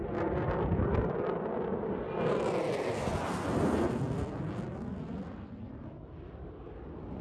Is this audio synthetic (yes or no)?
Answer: no